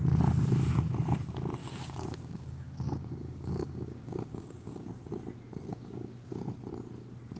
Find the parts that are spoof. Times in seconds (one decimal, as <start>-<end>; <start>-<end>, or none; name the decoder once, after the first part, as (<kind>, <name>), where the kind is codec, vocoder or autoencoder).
1.6-4.9 (codec, DAC); 5.7-6.4